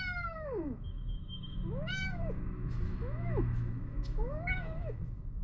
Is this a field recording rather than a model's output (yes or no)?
no